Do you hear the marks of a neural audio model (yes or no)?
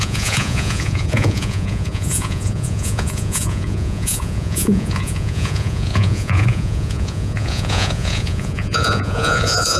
yes